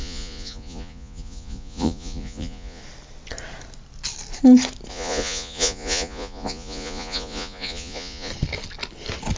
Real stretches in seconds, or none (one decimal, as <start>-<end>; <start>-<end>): 2.8-4.9; 8.3-9.4